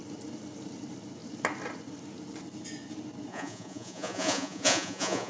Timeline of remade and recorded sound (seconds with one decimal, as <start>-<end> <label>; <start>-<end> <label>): 0.0-3.3 recorded; 3.3-5.3 remade